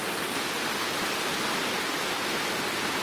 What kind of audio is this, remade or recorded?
recorded